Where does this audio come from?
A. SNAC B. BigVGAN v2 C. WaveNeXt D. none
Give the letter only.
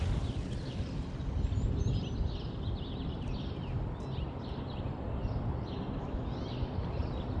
D